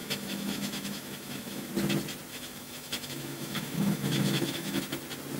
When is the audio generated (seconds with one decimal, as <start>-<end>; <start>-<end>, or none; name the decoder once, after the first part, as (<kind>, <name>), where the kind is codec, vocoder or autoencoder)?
0.0-1.7 (autoencoder, DAC-VAE); 2.3-4.8